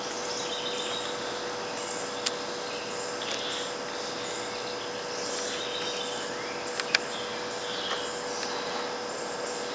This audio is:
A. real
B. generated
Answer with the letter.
A